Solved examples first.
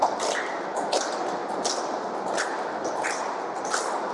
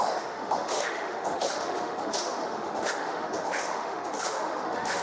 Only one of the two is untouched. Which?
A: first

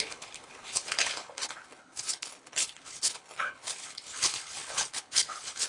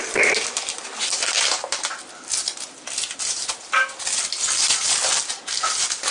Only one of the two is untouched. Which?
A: second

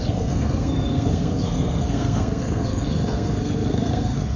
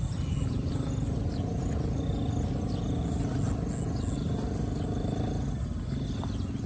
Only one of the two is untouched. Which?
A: second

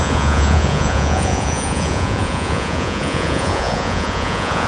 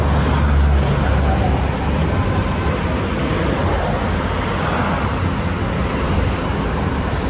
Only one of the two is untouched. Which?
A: second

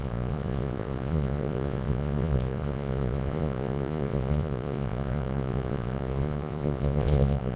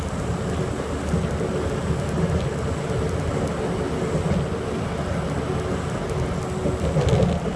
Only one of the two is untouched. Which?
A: second